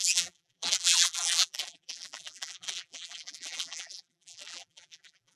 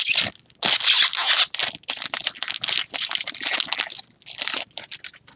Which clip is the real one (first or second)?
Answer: second